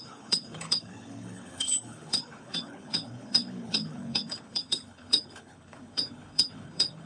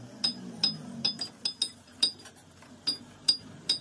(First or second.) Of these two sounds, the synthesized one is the first